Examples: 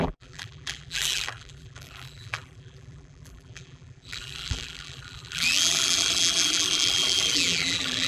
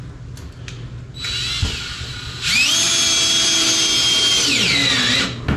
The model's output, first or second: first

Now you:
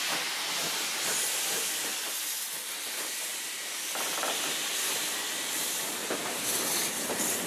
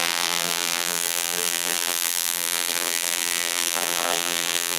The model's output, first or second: second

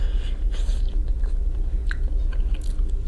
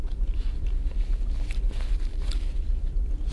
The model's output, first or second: second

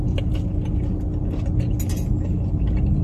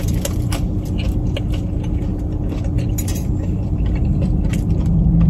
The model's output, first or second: second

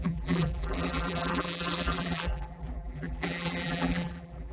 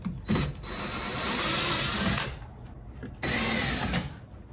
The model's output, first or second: first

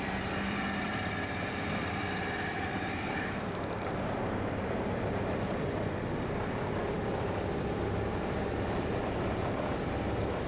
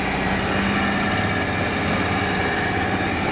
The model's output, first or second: first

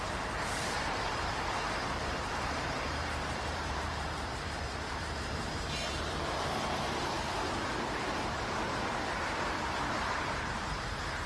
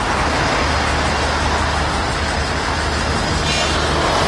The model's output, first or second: first